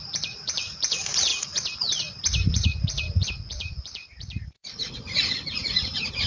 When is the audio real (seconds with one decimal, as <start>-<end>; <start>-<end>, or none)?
1.3-2.5